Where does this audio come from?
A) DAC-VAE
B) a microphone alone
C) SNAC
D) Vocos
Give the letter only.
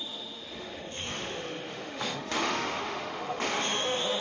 A